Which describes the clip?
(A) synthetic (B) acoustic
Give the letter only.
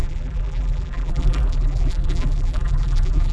A